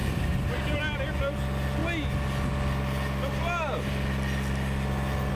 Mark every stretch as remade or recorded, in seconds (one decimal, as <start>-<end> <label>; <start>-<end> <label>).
0.0-0.8 remade; 0.8-5.3 recorded